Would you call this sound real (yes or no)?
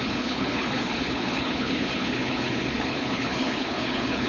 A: no